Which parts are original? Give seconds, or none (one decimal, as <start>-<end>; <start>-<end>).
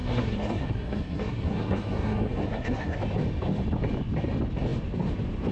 3.0-5.5